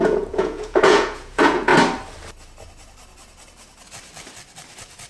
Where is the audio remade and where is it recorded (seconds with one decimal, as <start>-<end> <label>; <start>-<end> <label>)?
0.0-1.7 remade; 1.7-5.1 recorded